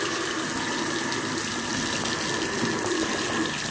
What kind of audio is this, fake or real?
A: real